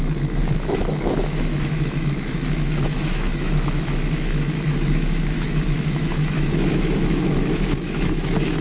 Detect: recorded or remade remade